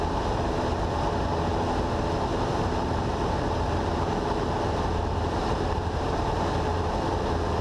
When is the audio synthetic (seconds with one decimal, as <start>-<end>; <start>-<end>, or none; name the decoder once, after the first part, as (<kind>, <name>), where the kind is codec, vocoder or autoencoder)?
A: 2.3-6.9 (vocoder, BigVGAN v2)